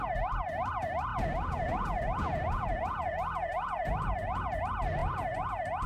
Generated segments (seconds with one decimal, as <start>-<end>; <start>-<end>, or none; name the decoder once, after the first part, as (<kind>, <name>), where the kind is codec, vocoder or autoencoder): 1.1-4.6 (vocoder, Vocos); 5.0-5.5